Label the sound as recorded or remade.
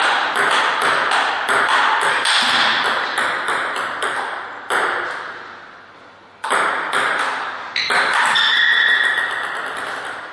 recorded